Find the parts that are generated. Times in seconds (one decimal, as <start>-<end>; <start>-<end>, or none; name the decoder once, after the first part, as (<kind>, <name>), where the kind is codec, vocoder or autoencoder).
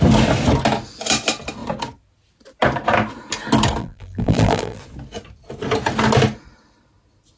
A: 3.8-4.8 (vocoder, BigVGAN v2)